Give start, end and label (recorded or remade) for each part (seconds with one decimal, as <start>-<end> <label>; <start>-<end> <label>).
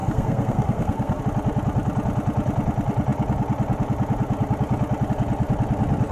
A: 0.0-1.2 remade; 1.2-6.1 recorded